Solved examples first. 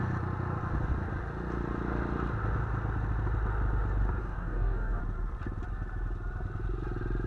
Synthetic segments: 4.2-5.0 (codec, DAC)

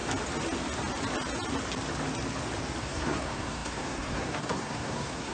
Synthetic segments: 2.8-5.3 (codec, SNAC)